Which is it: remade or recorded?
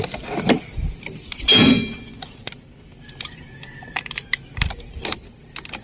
recorded